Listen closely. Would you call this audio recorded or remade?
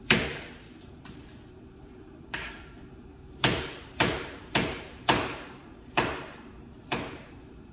remade